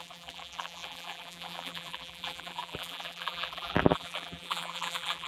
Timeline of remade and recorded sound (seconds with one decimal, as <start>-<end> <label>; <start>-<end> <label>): 0.0-5.3 remade